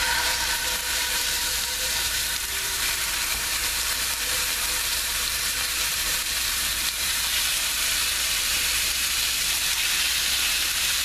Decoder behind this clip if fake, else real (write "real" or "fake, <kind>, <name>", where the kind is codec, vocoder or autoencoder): fake, vocoder, BigVGAN v2